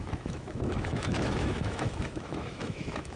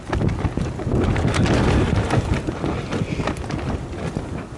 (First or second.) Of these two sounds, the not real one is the first